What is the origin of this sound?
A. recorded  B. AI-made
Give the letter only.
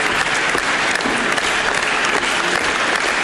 A